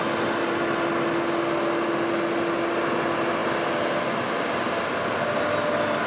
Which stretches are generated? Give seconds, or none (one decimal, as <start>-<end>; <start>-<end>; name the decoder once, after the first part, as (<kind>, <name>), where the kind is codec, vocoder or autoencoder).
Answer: none